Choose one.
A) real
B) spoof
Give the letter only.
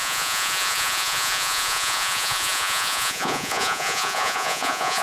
B